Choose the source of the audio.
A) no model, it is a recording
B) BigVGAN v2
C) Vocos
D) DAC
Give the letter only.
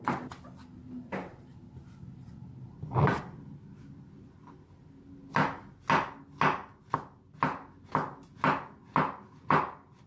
A